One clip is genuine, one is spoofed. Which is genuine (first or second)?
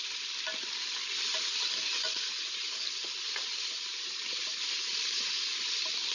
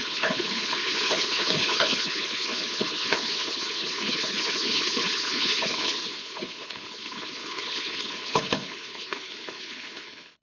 first